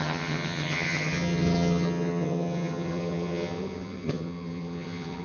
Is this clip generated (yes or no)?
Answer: yes